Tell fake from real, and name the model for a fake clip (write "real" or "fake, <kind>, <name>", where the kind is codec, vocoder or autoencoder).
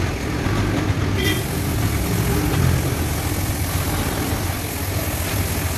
real